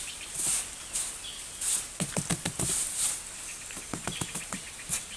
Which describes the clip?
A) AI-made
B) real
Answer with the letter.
B